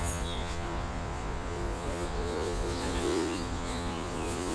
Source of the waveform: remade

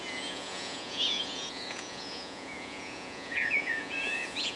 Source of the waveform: remade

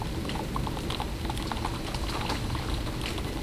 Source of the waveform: recorded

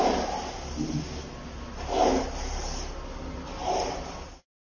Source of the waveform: recorded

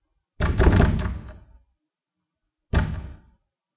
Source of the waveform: recorded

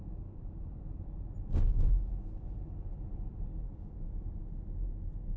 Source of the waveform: recorded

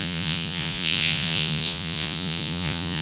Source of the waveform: remade